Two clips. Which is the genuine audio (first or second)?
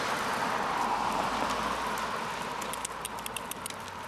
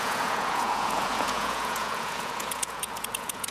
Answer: first